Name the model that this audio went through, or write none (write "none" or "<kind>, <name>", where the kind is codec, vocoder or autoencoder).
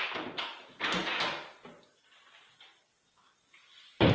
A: none